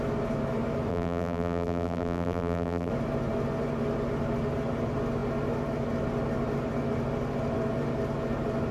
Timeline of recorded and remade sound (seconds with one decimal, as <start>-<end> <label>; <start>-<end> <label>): 0.0-0.9 recorded; 0.9-2.9 remade; 2.9-8.7 recorded